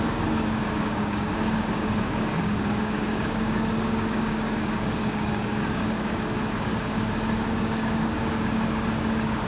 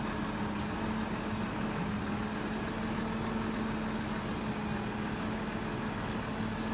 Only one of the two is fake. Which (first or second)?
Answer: first